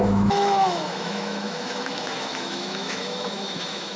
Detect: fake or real fake